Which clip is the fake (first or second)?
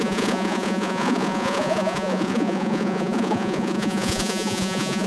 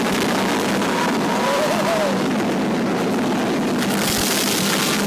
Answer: first